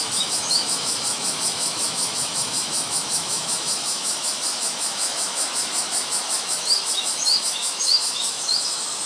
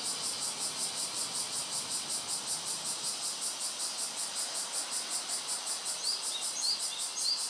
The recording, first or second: second